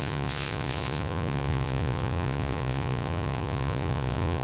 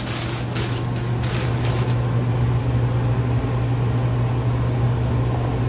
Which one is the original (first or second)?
second